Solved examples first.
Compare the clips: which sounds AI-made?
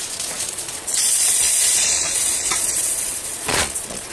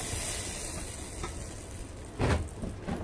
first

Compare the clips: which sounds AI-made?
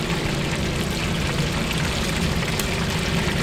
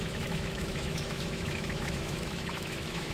second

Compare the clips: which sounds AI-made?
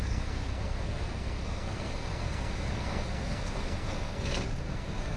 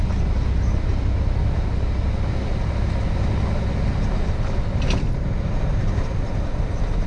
first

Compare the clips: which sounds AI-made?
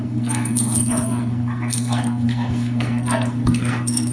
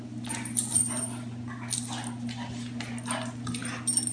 first